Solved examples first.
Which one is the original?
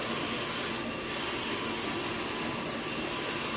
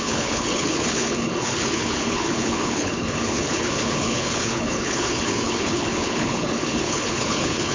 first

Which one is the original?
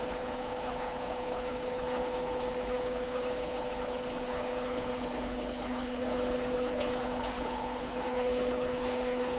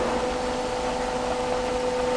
second